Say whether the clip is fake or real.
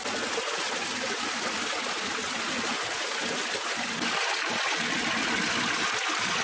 real